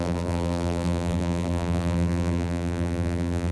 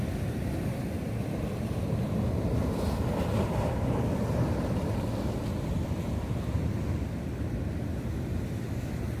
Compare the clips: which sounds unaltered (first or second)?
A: second